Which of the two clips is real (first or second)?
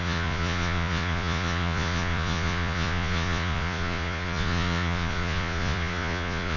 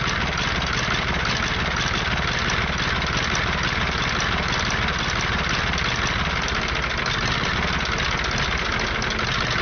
second